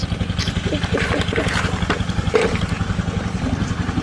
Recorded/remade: recorded